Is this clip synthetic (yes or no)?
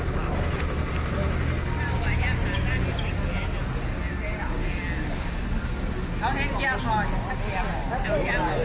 no